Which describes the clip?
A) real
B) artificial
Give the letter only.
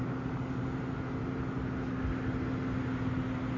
A